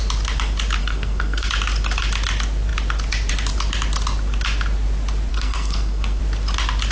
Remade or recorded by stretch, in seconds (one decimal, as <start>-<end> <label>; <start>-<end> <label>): 0.0-0.8 recorded; 0.8-1.5 remade; 1.5-5.3 recorded; 5.3-6.2 remade; 6.2-6.9 recorded

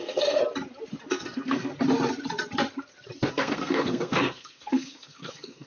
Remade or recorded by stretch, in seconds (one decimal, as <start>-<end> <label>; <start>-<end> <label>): 0.0-0.4 remade; 0.4-1.1 recorded; 1.1-1.7 remade; 1.7-3.3 recorded; 3.3-5.7 remade

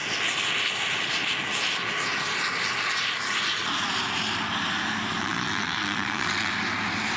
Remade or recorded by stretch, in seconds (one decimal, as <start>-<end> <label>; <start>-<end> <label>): 0.0-5.2 recorded; 5.2-6.5 remade; 6.5-7.2 recorded

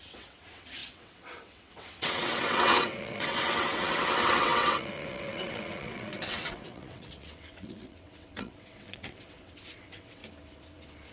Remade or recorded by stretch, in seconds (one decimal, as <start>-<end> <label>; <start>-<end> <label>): 0.0-10.2 remade; 10.2-11.1 recorded